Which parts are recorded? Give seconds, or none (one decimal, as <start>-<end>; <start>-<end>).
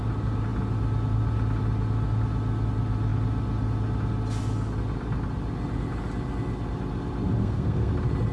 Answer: 0.0-7.4; 7.9-8.3